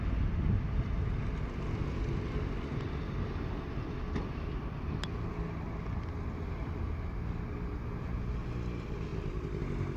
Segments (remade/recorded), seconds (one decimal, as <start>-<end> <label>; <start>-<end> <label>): 0.0-10.0 recorded